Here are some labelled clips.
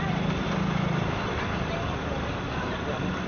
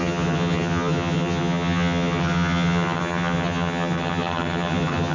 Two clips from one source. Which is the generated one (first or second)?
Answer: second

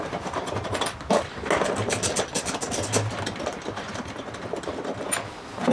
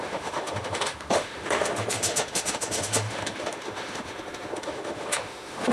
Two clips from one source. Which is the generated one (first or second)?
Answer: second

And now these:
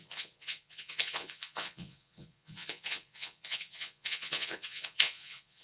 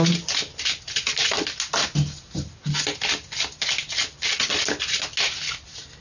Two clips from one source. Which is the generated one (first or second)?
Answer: first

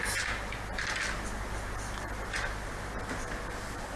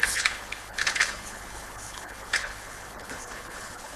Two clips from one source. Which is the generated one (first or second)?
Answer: second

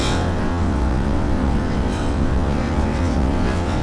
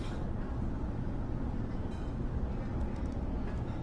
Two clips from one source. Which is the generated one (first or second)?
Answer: first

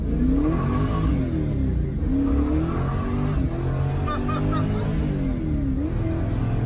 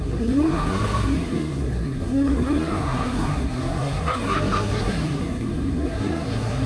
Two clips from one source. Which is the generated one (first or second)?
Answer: second